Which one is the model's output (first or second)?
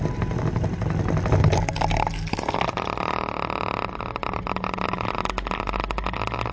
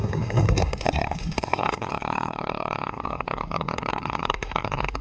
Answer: second